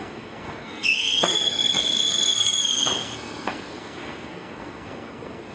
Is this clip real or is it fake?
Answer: fake